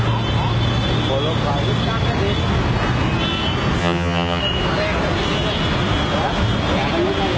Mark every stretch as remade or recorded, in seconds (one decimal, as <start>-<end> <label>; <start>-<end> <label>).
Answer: 0.0-3.8 recorded; 3.8-4.4 remade; 4.4-7.4 recorded